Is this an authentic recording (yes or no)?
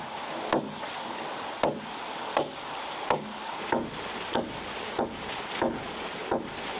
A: yes